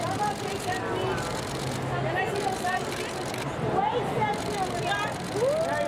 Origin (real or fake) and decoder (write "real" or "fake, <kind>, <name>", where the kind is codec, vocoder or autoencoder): real